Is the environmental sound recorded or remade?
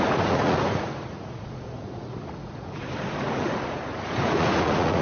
remade